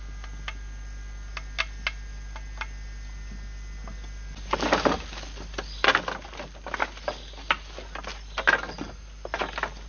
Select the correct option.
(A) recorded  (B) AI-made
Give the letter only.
A